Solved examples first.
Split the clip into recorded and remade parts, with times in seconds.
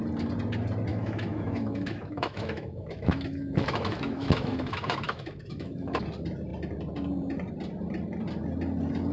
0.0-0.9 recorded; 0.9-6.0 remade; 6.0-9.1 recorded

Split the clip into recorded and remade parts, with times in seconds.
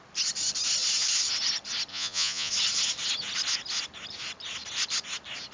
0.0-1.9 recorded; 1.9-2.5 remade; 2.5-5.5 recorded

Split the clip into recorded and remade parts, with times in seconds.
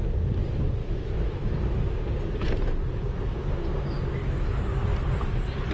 0.0-0.8 recorded; 0.8-1.5 remade; 1.5-4.2 recorded; 4.2-4.9 remade; 4.9-5.7 recorded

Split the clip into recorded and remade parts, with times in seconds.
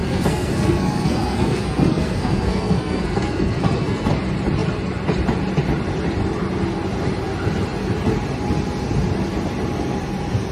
0.0-4.1 remade; 4.1-10.5 recorded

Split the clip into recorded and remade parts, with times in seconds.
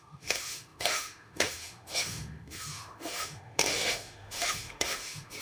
0.0-5.4 remade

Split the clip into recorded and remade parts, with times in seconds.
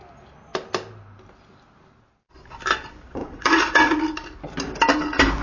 0.0-3.2 recorded; 3.2-4.0 remade; 4.0-5.4 recorded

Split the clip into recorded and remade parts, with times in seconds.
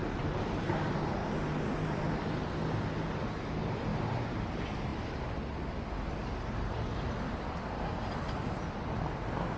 0.0-0.7 remade; 0.7-3.9 recorded; 3.9-4.5 remade; 4.5-4.9 recorded; 4.9-5.5 remade; 5.5-9.6 recorded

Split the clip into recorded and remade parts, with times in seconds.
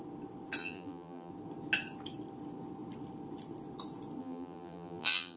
0.0-0.6 recorded; 0.6-1.3 remade; 1.3-4.2 recorded; 4.2-5.4 remade